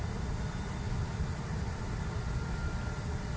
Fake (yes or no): no